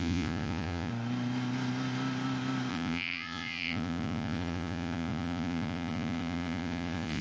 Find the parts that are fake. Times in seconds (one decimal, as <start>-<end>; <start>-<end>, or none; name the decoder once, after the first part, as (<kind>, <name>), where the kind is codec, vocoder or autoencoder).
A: 0.0-0.9 (vocoder, Vocos); 2.7-7.2